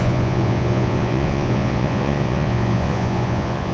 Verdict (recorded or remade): remade